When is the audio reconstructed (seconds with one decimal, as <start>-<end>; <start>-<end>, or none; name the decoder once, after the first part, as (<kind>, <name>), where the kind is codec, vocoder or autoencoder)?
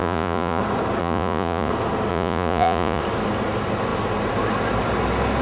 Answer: 0.0-0.6 (vocoder, Vocos); 1.0-1.7; 2.1-3.0